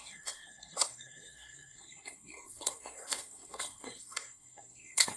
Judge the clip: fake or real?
fake